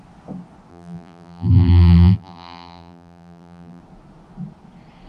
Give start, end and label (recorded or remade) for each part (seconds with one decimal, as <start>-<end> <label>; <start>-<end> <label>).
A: 0.0-0.7 recorded; 0.7-3.8 remade; 3.8-5.1 recorded